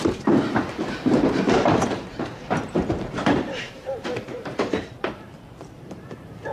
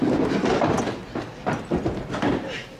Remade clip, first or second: first